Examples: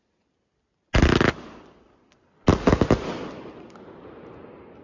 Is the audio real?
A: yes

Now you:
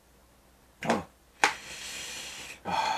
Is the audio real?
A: yes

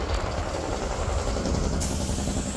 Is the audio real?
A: yes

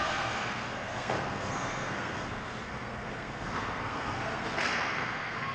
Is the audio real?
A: no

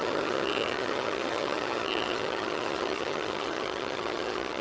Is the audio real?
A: no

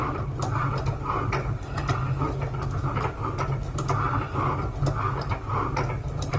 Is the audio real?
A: yes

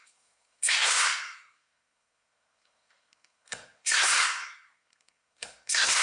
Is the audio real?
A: no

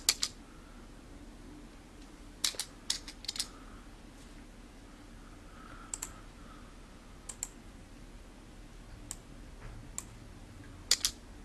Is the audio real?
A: yes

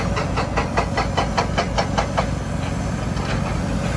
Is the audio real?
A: yes